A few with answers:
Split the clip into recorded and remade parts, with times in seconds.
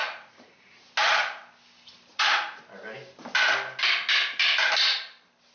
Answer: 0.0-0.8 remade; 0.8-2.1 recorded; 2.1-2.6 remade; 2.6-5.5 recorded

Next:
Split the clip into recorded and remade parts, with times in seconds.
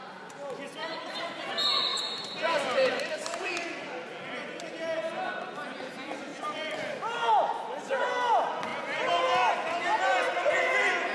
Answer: 0.0-0.8 recorded; 0.8-1.5 remade; 1.5-1.9 recorded; 1.9-3.1 remade; 3.1-11.1 recorded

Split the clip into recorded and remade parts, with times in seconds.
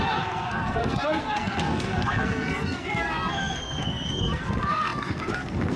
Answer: 0.0-5.8 remade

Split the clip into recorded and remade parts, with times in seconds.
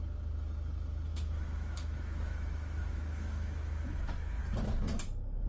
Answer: 0.0-1.1 recorded; 1.1-4.4 remade; 4.4-5.5 recorded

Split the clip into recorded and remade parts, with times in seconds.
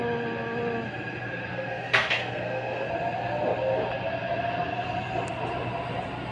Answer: 0.0-1.5 recorded; 1.5-2.9 remade; 2.9-6.3 recorded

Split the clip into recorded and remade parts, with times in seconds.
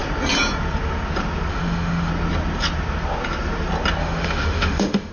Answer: 0.0-1.5 recorded; 1.5-2.1 remade; 2.1-4.0 recorded; 4.0-5.1 remade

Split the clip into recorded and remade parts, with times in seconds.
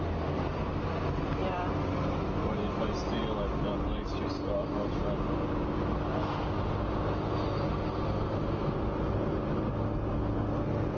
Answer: 0.0-11.0 recorded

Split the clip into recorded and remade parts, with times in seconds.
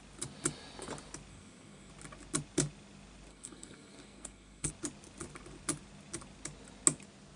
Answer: 0.0-1.3 recorded; 1.3-1.9 remade; 1.9-3.3 recorded; 3.3-4.7 remade; 4.7-7.4 recorded